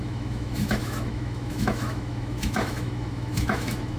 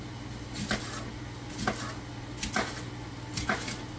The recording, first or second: second